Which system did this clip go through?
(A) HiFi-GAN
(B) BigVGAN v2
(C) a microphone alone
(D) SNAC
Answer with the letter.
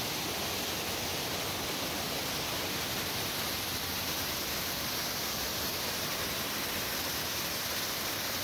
C